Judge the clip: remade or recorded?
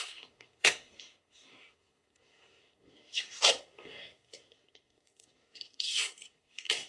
remade